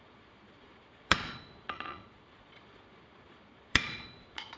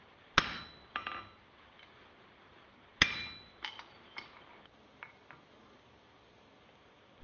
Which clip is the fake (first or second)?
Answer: first